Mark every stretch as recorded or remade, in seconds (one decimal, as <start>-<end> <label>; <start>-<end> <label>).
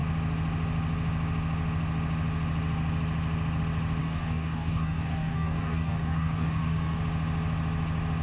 0.0-4.0 recorded; 4.0-7.0 remade; 7.0-8.2 recorded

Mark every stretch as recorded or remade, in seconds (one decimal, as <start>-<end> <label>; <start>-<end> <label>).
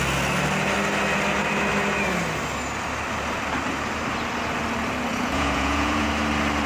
0.0-5.1 recorded; 5.1-6.1 remade; 6.1-6.7 recorded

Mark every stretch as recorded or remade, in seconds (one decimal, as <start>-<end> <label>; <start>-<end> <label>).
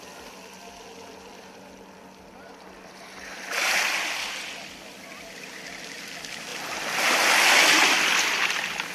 0.0-8.9 recorded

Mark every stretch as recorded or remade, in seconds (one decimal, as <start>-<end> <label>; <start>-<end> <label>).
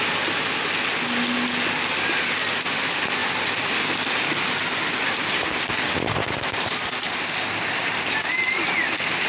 0.0-3.2 recorded; 3.2-5.4 remade; 5.4-9.3 recorded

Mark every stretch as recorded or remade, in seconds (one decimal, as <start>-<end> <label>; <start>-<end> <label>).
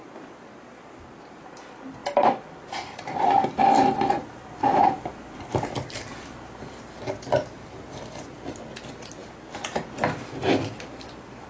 0.0-2.0 recorded; 2.0-3.6 remade; 3.6-4.6 recorded; 4.6-5.1 remade; 5.1-11.5 recorded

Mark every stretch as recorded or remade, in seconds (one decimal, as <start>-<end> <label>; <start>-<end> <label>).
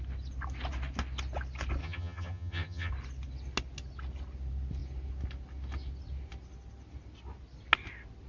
0.0-1.8 recorded; 1.8-2.9 remade; 2.9-8.3 recorded